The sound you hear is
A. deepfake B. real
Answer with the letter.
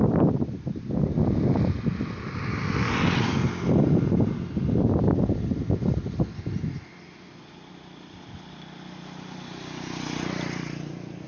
B